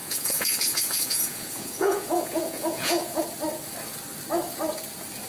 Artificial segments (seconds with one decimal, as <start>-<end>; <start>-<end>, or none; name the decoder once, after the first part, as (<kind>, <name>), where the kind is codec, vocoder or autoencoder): 0.0-3.2 (vocoder, Vocos)

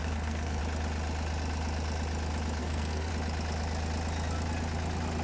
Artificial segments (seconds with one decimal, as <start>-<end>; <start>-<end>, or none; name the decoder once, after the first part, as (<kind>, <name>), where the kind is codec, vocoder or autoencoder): 0.0-0.6 (codec, SNAC); 2.6-3.1

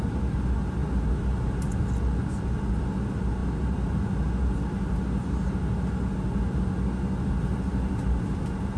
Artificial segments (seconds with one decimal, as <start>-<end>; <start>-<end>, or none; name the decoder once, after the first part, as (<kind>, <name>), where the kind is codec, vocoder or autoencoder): none

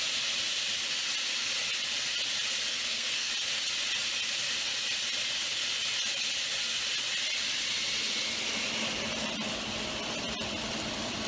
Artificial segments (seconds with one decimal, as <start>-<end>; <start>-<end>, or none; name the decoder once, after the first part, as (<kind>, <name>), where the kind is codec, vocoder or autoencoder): 2.7-3.3 (codec, SNAC)

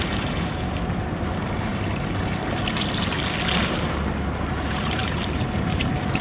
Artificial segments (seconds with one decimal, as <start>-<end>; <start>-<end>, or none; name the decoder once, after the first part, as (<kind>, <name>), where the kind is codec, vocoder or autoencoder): 0.0-1.7 (vocoder, BigVGAN v2); 4.5-6.2

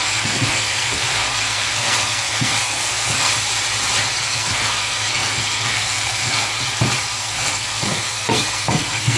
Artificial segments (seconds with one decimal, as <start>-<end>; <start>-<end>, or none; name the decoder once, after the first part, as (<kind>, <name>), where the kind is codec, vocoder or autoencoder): 0.0-3.3 (codec, SNAC); 4.2-6.5; 7.2-9.2

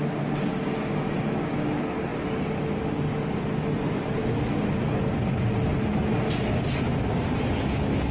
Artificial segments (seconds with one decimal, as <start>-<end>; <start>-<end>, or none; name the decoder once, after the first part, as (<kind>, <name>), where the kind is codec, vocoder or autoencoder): 0.5-1.7 (codec, DAC)